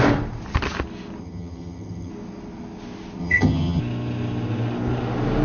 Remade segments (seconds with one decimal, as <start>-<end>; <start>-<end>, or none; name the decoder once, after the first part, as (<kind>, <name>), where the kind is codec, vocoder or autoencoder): 1.2-2.1 (vocoder, HiFi-GAN); 3.2-3.8